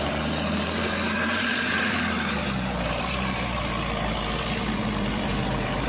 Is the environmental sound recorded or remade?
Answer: remade